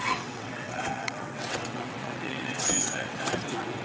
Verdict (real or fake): fake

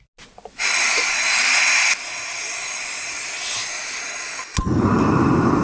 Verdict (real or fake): real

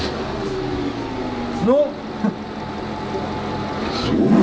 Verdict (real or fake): real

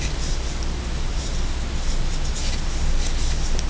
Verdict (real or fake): real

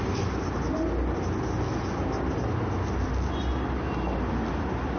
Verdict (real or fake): real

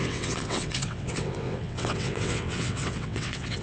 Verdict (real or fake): fake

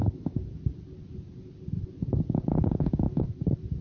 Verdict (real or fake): real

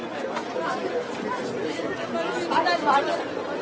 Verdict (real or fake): real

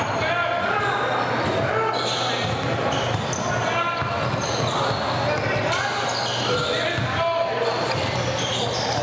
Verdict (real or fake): real